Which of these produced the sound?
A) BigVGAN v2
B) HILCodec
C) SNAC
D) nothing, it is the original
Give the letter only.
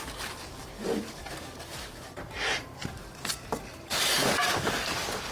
A